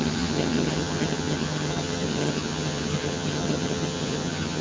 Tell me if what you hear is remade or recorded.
remade